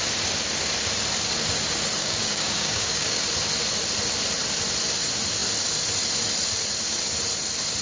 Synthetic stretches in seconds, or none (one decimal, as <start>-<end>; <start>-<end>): 2.0-3.2